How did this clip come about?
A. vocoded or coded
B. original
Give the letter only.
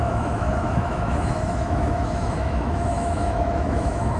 A